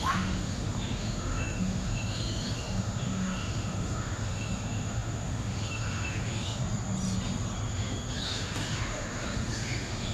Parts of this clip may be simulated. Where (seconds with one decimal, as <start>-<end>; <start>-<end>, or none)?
0.0-6.6; 7.7-10.1